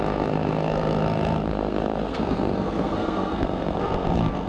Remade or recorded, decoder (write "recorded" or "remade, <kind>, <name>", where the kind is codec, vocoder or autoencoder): remade, codec, SNAC